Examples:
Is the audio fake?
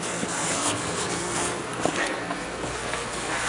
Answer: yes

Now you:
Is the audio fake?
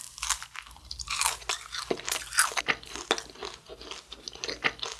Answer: no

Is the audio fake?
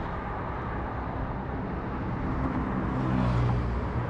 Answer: no